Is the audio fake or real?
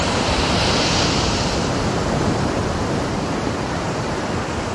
fake